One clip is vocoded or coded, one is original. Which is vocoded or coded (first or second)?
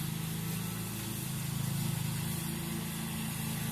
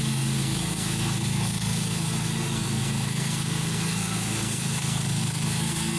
second